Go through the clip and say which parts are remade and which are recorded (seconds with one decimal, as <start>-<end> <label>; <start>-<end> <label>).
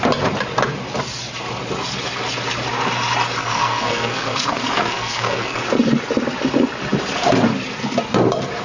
0.0-3.4 recorded; 3.4-5.6 remade; 5.6-8.6 recorded